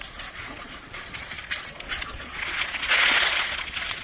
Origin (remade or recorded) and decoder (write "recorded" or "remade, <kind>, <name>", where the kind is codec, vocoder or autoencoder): remade, vocoder, Vocos